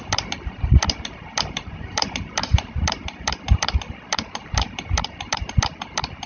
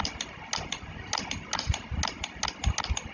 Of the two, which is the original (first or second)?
second